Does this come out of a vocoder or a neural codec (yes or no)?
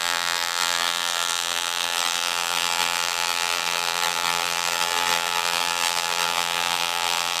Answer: yes